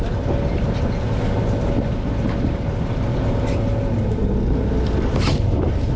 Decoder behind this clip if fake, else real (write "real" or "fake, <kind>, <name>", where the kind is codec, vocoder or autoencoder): real